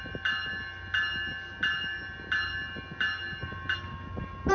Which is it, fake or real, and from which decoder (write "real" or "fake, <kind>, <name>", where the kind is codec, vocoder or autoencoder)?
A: real